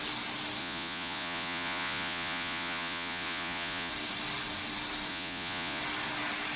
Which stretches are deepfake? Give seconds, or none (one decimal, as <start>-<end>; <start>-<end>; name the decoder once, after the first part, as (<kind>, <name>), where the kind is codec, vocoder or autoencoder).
0.6-3.9 (vocoder, Vocos); 5.1-5.8